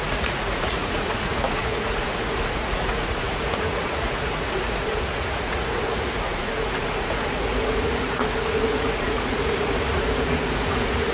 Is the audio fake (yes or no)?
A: yes